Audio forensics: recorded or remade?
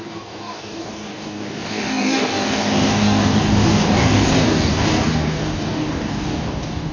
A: remade